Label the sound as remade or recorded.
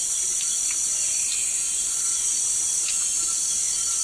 recorded